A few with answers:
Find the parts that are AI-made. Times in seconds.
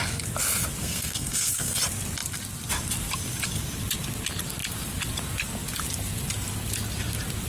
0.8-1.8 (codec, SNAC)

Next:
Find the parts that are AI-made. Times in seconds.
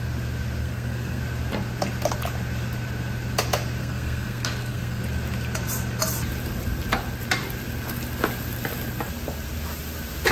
0.6-1.2 (codec, SNAC); 3.8-5.0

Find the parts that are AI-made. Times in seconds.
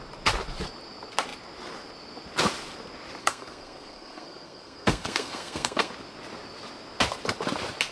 3.2-5.9 (codec, SNAC)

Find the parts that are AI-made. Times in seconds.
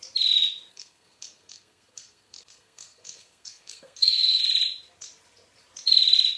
0.7-4.4 (codec, SNAC)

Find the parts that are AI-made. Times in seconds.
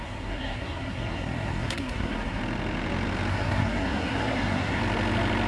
0.0-2.4 (codec, SNAC); 3.3-4.8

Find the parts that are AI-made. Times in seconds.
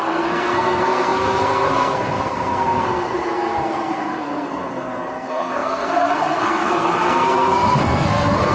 0.0-8.5 (codec, SNAC)